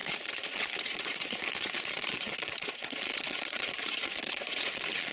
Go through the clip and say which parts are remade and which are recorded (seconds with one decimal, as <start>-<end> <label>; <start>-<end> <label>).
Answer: 0.0-5.1 remade